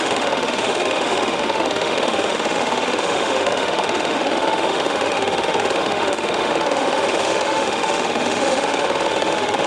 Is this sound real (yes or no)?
no